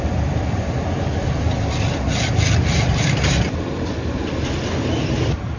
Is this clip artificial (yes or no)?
yes